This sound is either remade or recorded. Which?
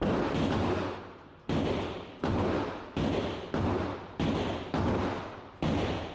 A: recorded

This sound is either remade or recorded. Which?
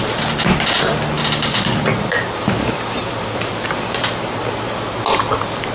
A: recorded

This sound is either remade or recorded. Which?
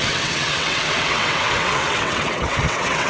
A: remade